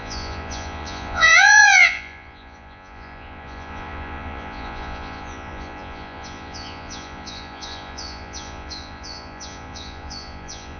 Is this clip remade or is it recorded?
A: remade